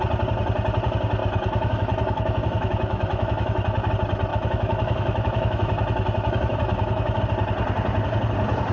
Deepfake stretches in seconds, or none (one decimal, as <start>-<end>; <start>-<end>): 1.2-3.9; 4.3-7.2